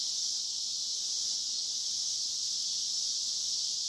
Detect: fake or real real